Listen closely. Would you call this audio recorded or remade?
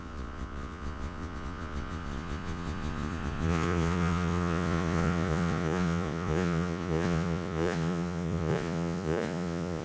remade